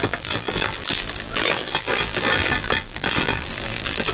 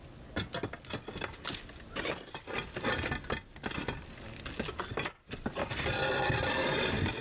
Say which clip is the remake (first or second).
first